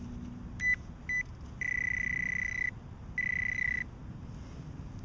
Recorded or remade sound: recorded